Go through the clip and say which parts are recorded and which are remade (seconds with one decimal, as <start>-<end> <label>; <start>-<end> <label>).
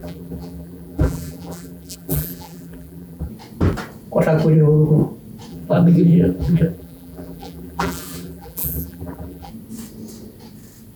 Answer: 0.0-3.3 remade; 3.3-5.5 recorded; 5.5-9.5 remade; 9.5-11.0 recorded